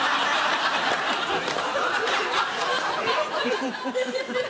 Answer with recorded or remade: remade